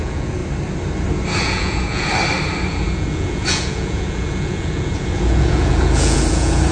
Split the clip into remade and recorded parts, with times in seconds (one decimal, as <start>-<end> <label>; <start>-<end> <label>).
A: 0.0-0.4 remade; 0.4-1.4 recorded; 1.4-2.1 remade; 2.1-2.7 recorded; 2.7-6.7 remade